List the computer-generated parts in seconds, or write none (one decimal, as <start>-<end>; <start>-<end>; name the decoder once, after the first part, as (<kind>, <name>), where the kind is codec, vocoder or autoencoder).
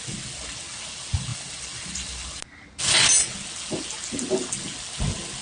none